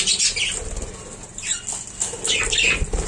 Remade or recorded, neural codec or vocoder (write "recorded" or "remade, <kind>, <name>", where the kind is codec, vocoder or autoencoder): recorded